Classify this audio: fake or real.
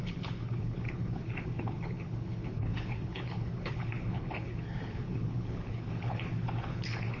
fake